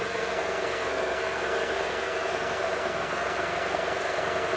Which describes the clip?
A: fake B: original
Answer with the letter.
A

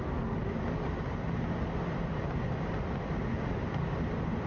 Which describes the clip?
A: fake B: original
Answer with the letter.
B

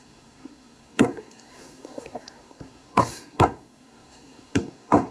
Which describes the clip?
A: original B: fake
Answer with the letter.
B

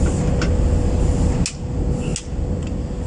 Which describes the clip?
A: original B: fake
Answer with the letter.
A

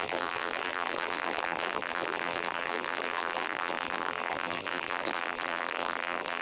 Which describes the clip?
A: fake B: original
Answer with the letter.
A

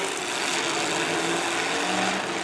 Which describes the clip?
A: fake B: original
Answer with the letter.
B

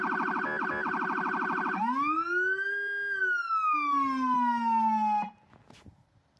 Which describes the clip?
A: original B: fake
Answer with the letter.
A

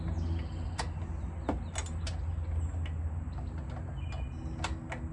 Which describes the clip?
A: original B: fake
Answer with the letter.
A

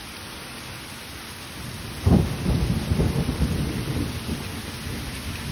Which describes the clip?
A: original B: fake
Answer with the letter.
A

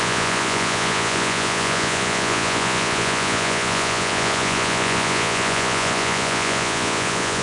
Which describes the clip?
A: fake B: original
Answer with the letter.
A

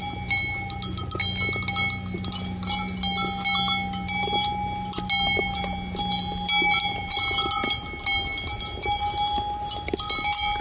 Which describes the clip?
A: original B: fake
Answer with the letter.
A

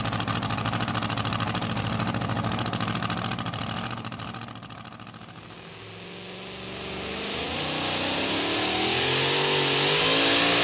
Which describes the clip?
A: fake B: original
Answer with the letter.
B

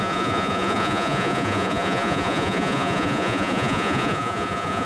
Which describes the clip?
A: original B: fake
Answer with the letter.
B